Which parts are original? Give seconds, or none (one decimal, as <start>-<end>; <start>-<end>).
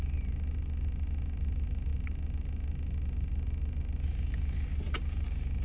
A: 0.0-5.6